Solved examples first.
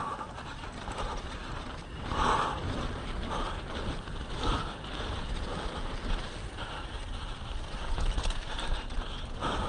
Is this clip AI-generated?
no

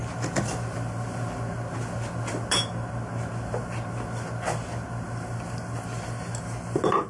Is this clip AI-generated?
no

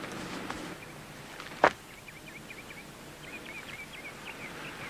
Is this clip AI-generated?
no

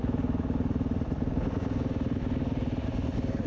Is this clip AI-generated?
no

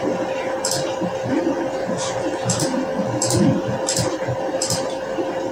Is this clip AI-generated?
no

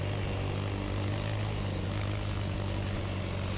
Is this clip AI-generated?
no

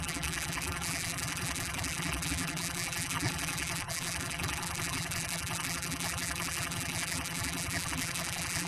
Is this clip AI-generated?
yes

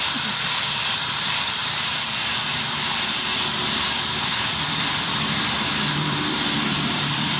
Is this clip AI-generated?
yes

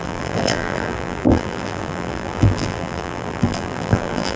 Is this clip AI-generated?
yes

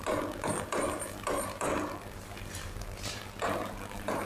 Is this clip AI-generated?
yes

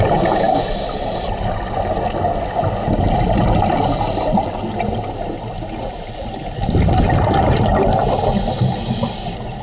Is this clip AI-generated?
no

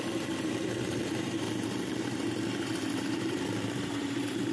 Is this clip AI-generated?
yes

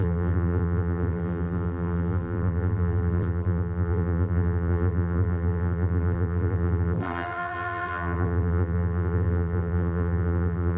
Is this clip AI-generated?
yes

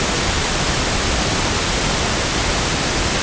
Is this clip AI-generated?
no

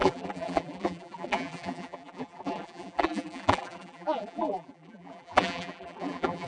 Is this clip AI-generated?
yes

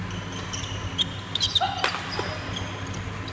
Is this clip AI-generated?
no